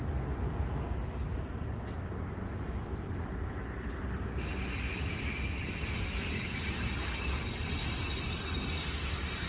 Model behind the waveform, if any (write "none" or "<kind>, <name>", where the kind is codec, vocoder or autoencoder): none